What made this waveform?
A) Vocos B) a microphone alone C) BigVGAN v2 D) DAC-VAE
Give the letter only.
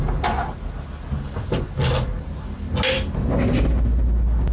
B